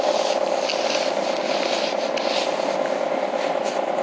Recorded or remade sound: recorded